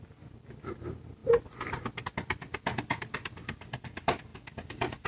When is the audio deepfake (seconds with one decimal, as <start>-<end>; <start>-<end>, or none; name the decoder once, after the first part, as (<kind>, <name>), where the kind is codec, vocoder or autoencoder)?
none